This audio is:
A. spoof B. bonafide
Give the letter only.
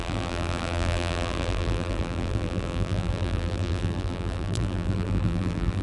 A